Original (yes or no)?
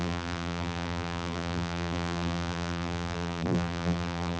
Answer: no